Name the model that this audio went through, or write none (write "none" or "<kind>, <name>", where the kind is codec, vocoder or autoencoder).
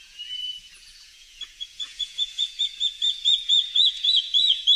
vocoder, Vocos